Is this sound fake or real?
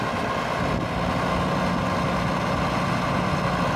real